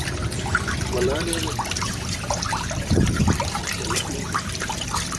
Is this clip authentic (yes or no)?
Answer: yes